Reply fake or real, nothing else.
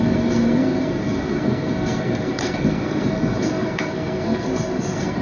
fake